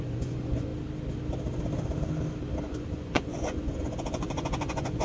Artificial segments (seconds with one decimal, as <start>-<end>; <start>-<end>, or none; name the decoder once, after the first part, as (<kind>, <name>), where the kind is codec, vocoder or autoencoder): 0.0-0.7 (vocoder, Vocos); 2.6-5.0